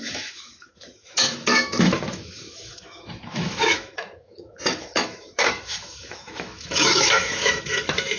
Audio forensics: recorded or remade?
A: remade